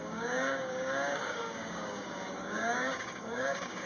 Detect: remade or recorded remade